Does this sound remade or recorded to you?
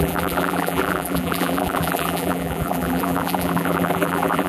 remade